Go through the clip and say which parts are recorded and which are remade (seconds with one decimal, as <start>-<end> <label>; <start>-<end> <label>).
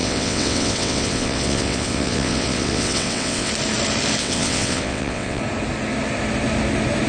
0.0-3.5 remade; 3.5-4.2 recorded; 4.2-5.4 remade; 5.4-7.1 recorded